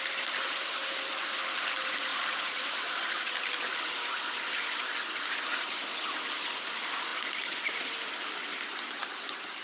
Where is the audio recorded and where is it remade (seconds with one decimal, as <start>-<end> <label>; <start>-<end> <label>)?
0.0-2.1 recorded; 2.1-3.5 remade; 3.5-9.6 recorded